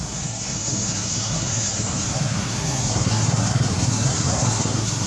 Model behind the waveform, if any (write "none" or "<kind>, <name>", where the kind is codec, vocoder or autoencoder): codec, SNAC